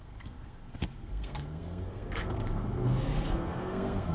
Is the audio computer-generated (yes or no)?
yes